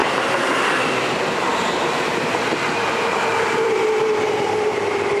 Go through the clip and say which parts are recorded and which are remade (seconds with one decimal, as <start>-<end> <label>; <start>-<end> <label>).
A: 0.0-3.1 recorded; 3.1-5.2 remade